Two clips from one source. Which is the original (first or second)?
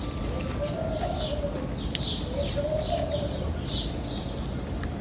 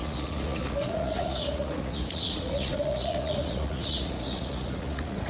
first